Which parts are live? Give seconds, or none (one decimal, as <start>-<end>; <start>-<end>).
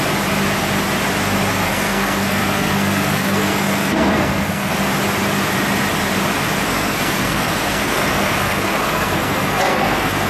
0.0-1.5; 4.7-6.7